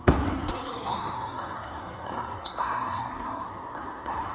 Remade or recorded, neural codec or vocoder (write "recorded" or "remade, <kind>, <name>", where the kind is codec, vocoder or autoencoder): remade, codec, SNAC